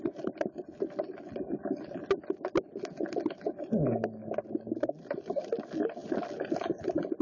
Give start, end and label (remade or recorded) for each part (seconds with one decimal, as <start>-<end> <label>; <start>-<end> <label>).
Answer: 0.0-7.2 recorded